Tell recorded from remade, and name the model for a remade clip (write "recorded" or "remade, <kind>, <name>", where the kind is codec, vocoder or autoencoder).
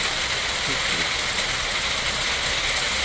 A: recorded